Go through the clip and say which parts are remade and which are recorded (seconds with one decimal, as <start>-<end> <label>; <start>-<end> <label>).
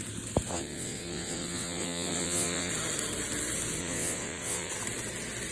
0.0-0.5 recorded; 0.5-2.7 remade; 2.7-3.8 recorded; 3.8-4.7 remade; 4.7-5.5 recorded